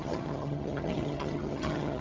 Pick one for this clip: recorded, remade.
remade